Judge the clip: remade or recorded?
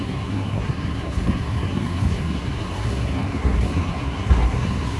remade